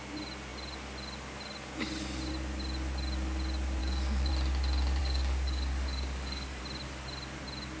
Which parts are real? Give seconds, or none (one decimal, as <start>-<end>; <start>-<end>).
0.0-3.8; 4.3-5.0; 6.6-7.8

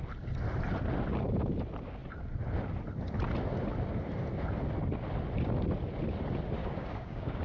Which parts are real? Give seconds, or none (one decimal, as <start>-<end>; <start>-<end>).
0.0-6.6